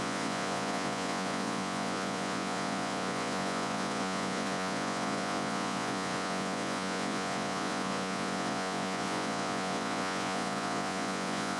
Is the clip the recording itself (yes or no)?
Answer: no